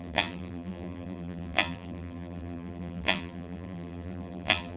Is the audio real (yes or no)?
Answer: no